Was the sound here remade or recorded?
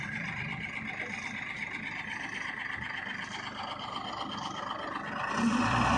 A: remade